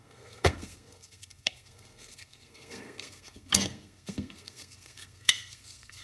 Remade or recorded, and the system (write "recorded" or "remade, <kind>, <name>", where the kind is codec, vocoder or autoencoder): remade, codec, SNAC